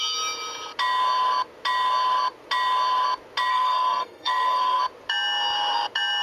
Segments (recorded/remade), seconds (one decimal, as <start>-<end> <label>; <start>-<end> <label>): 0.0-3.5 recorded; 3.5-4.8 remade; 4.8-6.2 recorded